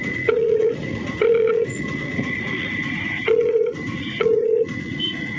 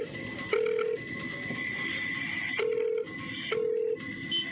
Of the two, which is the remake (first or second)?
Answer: first